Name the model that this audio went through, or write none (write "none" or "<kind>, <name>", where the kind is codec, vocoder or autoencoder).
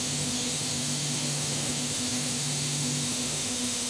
autoencoder, DAC-VAE